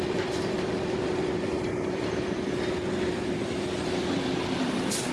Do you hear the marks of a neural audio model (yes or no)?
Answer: no